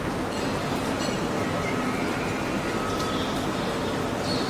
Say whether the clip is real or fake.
real